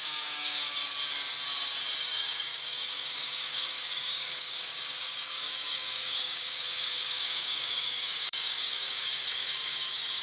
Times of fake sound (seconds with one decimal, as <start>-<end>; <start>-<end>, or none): 0.0-0.8; 2.0-10.2